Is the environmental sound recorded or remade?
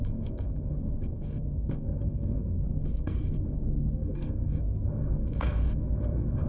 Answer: remade